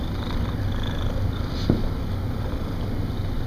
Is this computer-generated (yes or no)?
no